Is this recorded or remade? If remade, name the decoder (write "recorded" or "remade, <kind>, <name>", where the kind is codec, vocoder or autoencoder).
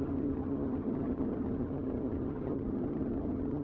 remade, vocoder, HiFi-GAN